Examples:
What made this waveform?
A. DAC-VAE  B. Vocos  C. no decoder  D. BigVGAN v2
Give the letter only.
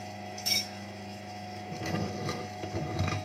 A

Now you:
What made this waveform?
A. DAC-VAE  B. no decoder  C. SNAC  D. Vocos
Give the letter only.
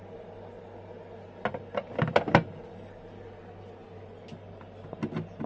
B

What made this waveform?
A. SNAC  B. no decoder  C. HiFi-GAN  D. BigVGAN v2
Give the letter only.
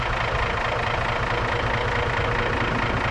B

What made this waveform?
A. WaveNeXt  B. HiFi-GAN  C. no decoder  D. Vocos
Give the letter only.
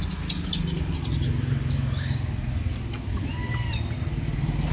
C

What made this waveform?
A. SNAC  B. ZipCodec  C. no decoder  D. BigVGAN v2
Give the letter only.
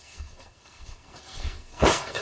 A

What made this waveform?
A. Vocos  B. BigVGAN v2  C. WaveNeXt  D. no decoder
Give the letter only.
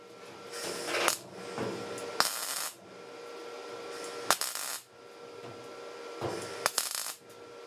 D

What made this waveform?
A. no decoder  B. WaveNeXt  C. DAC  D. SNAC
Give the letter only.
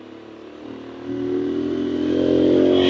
A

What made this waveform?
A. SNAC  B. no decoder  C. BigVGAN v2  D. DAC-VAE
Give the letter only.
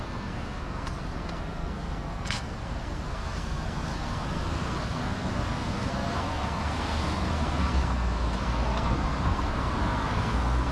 A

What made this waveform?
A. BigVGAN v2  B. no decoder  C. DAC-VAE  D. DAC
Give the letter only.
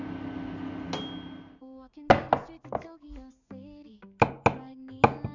B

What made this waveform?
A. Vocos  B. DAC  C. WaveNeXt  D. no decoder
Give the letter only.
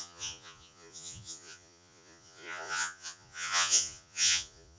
A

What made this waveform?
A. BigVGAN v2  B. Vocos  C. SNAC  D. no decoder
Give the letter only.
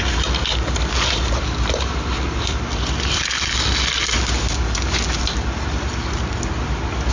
D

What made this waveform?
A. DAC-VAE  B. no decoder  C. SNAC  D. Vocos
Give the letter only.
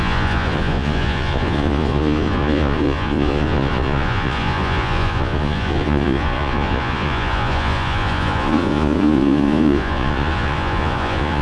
D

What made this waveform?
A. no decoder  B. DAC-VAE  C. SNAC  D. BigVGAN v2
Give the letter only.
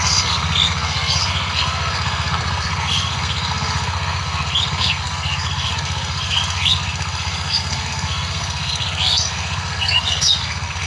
C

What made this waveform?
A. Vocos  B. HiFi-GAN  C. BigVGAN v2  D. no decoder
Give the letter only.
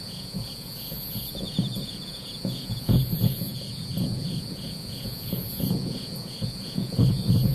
A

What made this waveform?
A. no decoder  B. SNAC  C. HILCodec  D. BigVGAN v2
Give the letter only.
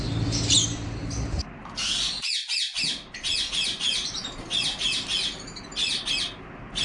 A